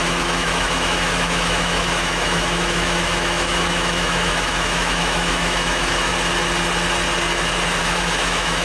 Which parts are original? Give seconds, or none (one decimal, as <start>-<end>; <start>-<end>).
6.1-7.8